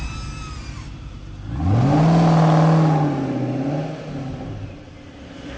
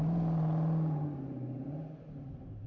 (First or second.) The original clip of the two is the first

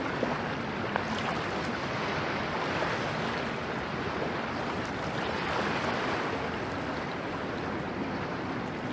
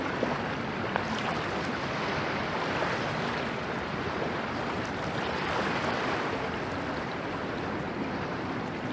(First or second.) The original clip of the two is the first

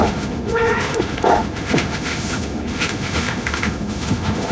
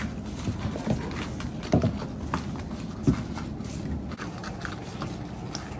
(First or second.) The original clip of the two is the second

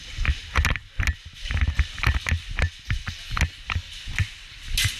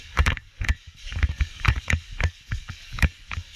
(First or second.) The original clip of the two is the first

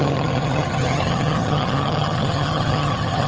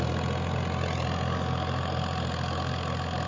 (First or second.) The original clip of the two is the second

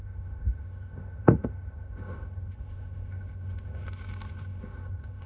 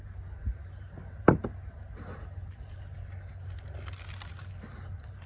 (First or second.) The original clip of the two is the second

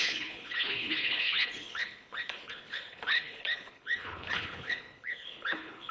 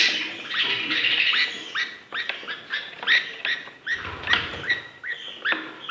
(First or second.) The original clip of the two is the second